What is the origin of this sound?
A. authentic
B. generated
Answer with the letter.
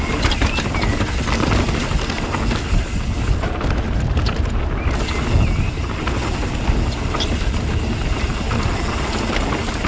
A